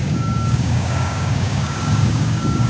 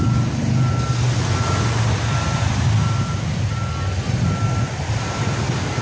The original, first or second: second